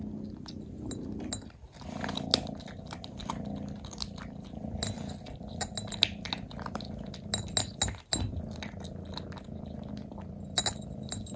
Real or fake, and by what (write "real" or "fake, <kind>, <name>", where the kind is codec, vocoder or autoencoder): real